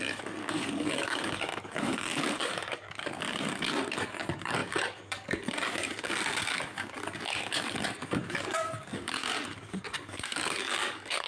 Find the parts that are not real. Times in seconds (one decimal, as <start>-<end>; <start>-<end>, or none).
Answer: 0.0-11.3